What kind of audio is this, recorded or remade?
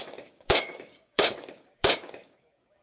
remade